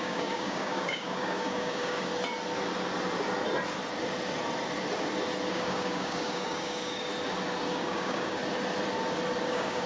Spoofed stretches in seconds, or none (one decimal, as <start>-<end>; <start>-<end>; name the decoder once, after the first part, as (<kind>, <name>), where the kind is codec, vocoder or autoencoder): 0.0-2.1 (codec, DAC); 5.5-7.1; 7.7-8.4; 9.5-9.9